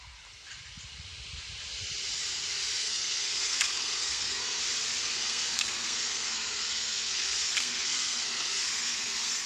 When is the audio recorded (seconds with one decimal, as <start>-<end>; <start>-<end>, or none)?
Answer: 0.0-2.8; 4.6-5.0

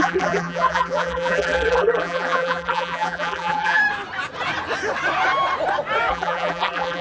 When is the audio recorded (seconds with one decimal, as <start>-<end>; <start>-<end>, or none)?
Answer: 3.8-6.1

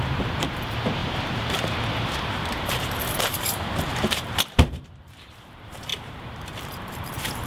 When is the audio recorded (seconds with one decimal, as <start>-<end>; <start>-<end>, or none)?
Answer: none

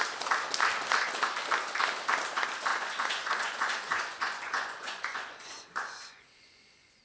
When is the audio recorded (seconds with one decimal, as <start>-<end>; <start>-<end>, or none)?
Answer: 0.0-2.7

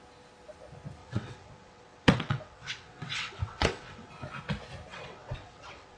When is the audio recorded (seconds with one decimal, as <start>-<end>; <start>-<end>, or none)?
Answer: 0.0-1.0; 4.1-4.9